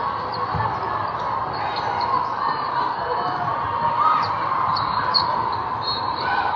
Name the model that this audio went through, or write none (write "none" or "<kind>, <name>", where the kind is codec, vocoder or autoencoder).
none